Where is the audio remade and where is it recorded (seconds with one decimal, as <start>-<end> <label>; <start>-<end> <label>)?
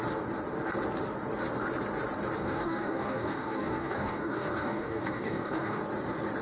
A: 0.0-2.4 recorded; 2.4-5.8 remade; 5.8-6.4 recorded